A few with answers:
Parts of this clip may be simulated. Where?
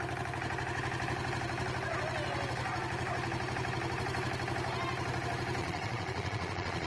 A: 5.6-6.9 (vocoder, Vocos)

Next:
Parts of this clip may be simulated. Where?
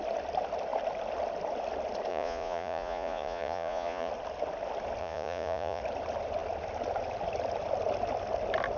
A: 2.1-4.1 (vocoder, Vocos); 5.0-5.8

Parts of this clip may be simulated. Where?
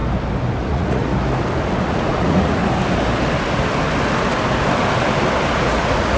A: 0.7-1.1 (vocoder, Vocos); 1.8-2.6; 5.5-6.2